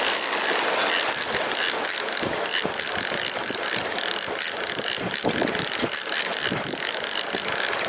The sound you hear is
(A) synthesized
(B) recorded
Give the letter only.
B